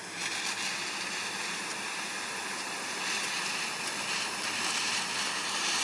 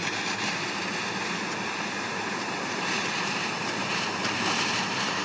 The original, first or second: first